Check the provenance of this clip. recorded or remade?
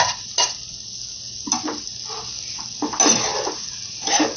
recorded